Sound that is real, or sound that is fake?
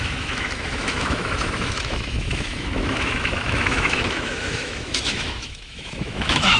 fake